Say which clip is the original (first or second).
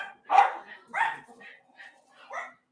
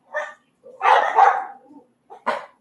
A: first